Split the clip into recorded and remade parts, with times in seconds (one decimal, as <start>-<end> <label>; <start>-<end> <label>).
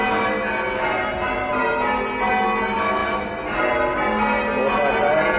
0.0-5.4 recorded